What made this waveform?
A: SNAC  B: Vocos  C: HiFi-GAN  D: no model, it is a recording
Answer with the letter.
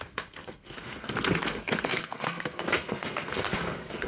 A